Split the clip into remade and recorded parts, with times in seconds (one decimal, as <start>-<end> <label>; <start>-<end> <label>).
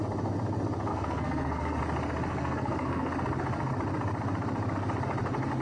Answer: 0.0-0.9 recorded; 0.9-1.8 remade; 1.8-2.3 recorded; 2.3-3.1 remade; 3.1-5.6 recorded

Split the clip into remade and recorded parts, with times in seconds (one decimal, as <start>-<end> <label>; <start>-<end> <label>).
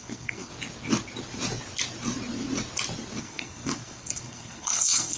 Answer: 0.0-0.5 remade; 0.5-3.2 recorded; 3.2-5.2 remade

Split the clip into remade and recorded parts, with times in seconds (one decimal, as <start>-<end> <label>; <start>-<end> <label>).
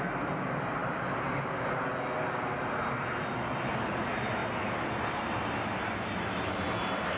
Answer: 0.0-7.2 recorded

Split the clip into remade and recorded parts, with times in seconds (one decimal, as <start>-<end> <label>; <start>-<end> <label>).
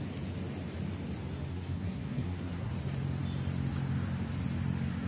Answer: 0.0-1.5 recorded; 1.5-2.7 remade; 2.7-5.1 recorded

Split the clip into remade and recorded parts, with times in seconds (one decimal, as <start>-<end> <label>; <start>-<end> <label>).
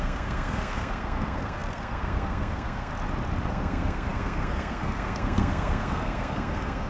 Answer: 0.0-2.9 remade; 2.9-3.5 recorded; 3.5-6.9 remade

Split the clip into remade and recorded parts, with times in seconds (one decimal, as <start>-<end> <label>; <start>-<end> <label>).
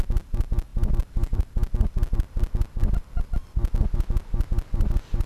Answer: 0.0-5.3 recorded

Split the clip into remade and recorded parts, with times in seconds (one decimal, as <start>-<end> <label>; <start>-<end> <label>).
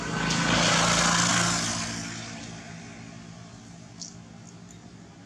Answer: 0.0-5.3 recorded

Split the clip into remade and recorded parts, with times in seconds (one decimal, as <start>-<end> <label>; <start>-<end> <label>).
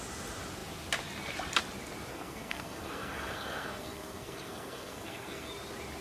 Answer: 0.0-2.1 recorded; 2.1-5.5 remade; 5.5-6.0 recorded